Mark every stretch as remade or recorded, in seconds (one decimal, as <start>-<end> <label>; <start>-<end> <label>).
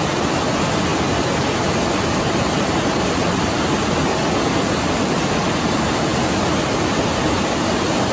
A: 0.0-8.1 recorded